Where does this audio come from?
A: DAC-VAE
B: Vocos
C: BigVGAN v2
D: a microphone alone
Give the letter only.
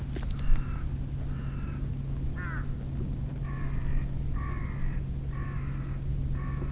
D